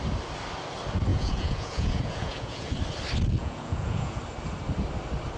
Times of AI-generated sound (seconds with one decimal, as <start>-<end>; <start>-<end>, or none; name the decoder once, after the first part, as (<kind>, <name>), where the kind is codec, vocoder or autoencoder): 1.1-2.7 (vocoder, Vocos); 3.4-4.2